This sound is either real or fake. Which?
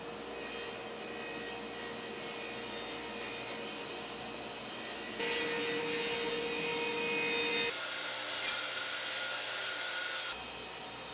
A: real